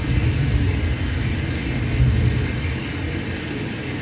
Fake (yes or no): no